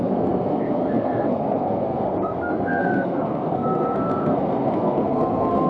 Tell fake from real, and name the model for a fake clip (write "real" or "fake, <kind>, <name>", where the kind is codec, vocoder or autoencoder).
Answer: fake, codec, SNAC